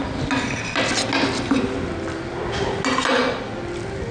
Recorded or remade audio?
recorded